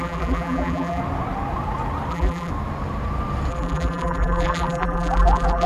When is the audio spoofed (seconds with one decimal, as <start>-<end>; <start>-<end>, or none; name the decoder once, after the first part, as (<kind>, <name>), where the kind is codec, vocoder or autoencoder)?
0.0-1.0 (vocoder, BigVGAN v2); 2.1-2.5; 3.5-5.7